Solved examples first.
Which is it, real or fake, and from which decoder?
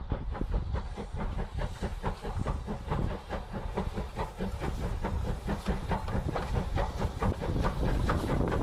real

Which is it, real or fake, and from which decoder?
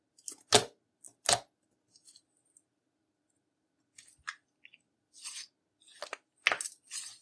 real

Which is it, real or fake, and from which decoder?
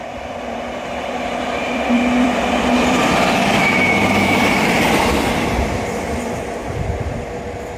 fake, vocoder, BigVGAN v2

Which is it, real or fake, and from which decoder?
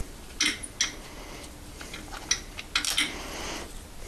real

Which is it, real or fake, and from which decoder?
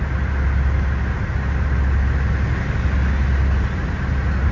real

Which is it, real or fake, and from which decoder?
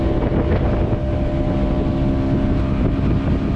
real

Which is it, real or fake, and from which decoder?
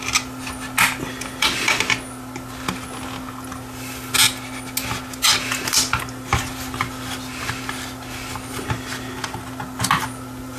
real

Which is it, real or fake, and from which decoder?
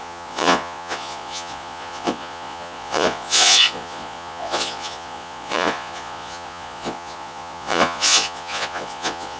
fake, vocoder, Vocos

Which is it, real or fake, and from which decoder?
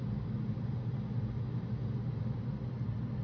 real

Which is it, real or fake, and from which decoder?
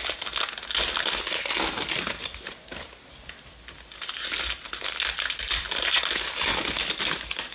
real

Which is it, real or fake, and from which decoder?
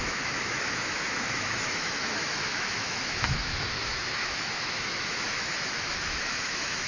fake, autoencoder, DAC-VAE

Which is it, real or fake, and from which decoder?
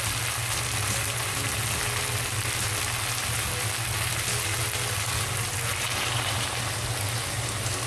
real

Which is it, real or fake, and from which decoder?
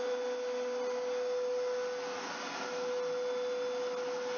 real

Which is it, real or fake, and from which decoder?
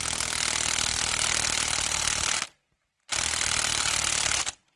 real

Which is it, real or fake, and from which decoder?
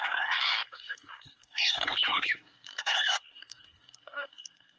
fake, codec, SNAC